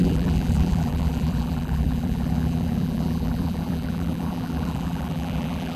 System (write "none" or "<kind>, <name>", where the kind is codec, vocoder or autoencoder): vocoder, BigVGAN v2